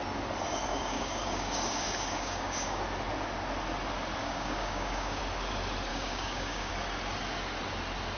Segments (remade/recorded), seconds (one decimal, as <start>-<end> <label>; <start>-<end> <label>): 0.0-0.7 recorded; 0.7-2.8 remade; 2.8-4.2 recorded; 4.2-5.2 remade; 5.2-5.9 recorded; 5.9-6.7 remade; 6.7-8.2 recorded